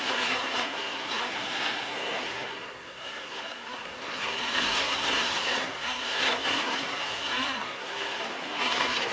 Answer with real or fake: fake